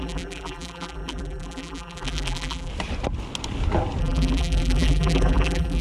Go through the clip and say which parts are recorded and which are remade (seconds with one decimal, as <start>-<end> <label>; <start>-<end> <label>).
0.0-2.7 remade; 2.7-4.0 recorded; 4.0-5.8 remade